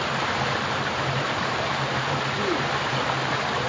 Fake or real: fake